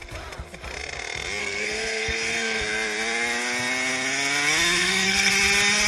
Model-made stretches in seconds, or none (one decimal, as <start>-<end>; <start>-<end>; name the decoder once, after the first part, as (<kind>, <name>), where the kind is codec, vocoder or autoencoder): 1.4-2.6 (codec, SNAC); 4.8-5.3